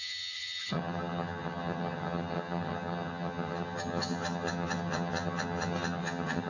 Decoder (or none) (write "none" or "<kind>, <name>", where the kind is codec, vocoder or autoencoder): vocoder, HiFi-GAN